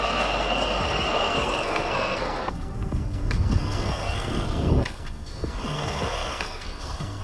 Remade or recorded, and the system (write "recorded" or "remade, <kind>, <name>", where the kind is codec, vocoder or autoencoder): remade, codec, SNAC